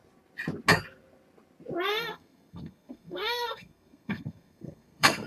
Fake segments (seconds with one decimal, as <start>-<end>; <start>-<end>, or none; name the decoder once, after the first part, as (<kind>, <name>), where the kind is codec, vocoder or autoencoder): 1.9-5.3 (codec, SNAC)